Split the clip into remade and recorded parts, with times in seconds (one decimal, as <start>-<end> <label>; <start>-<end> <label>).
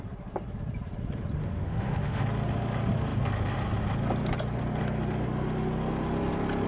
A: 0.0-1.4 recorded; 1.4-2.2 remade; 2.2-6.7 recorded